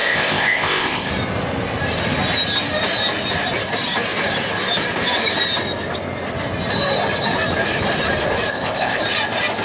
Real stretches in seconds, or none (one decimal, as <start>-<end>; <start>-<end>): 1.1-8.5; 9.0-9.6